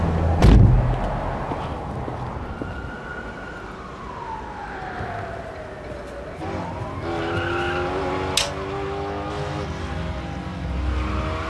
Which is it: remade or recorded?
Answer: recorded